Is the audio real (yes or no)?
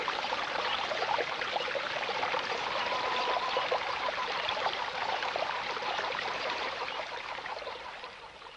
no